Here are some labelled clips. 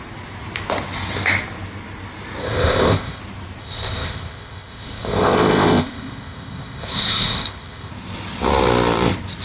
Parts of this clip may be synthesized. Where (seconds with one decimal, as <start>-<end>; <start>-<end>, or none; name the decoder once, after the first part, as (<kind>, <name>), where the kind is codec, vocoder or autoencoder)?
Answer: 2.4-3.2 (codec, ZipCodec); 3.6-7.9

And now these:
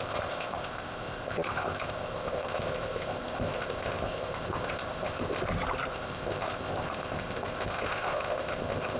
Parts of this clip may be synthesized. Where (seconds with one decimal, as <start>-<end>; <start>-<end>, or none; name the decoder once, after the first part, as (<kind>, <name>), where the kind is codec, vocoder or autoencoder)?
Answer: 0.0-5.4 (codec, ZipCodec); 5.9-9.0

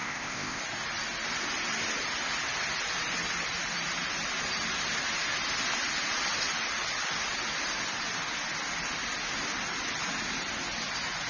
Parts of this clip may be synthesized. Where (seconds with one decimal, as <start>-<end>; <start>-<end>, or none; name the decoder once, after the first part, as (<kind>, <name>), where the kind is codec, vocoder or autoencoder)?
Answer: 0.0-0.6 (codec, ZipCodec)